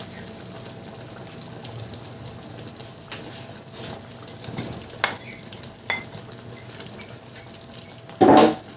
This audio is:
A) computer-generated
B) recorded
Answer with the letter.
B